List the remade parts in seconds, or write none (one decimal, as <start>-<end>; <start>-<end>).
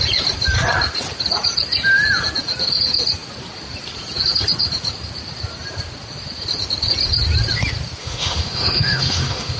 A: 8.0-9.6